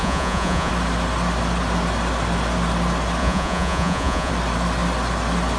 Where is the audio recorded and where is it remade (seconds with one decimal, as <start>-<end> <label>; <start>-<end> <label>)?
0.0-0.7 remade; 0.7-3.2 recorded; 3.2-4.3 remade; 4.3-5.6 recorded